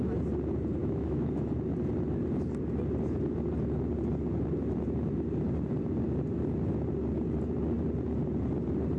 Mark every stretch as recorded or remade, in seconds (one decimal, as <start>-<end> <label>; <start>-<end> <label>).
0.0-0.8 recorded; 0.8-1.5 remade; 1.5-9.0 recorded